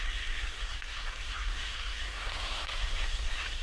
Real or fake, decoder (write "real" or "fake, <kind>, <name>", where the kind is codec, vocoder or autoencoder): fake, codec, SNAC